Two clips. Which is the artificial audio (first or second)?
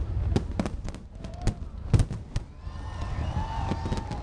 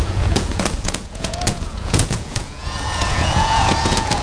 second